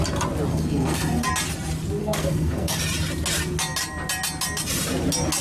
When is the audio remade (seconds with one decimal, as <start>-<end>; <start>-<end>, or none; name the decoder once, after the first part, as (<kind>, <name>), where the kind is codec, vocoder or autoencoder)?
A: 0.5-1.3 (codec, SNAC); 2.0-2.8